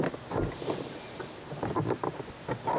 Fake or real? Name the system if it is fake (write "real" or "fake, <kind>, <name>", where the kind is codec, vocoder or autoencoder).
real